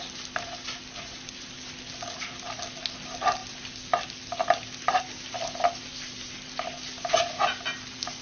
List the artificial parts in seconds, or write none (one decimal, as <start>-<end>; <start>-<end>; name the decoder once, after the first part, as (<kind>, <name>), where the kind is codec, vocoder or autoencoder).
none